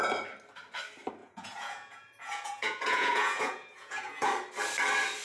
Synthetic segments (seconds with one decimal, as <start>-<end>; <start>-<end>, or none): 1.2-4.3